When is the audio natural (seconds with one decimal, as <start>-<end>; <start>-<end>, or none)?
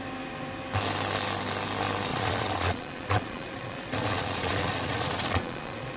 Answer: 0.0-2.1